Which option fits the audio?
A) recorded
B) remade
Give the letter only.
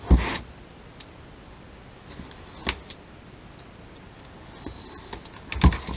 A